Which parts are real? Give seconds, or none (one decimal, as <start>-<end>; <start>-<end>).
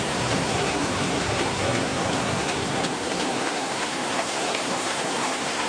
none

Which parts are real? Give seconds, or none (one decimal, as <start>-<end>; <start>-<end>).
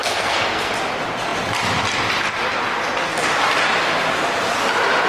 0.7-5.1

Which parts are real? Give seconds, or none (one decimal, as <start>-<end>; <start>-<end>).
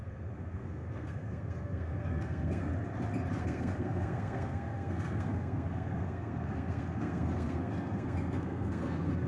2.7-3.4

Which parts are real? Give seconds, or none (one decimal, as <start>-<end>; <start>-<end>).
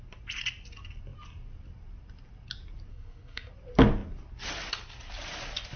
0.0-2.9; 3.5-5.8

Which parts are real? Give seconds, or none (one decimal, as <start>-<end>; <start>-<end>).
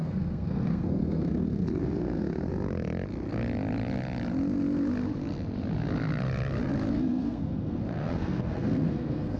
2.5-6.9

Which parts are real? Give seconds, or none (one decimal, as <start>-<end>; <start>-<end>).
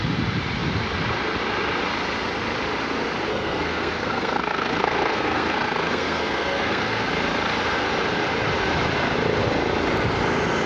0.0-3.3; 7.1-10.7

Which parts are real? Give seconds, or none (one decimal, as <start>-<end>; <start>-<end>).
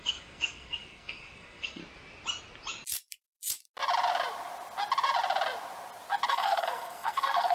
1.8-6.3